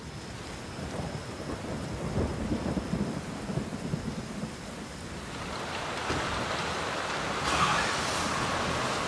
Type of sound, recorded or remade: recorded